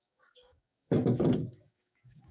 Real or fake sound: fake